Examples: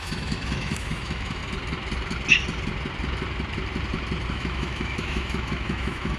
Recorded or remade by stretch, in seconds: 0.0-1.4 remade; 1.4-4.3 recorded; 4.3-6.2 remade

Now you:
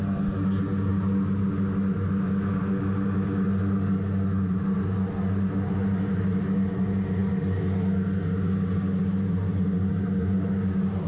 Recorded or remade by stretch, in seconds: 0.0-11.1 recorded

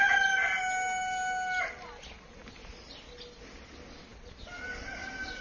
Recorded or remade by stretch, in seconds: 0.0-5.4 recorded

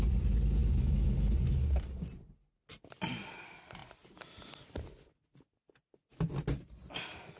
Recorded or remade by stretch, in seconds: 0.0-7.4 recorded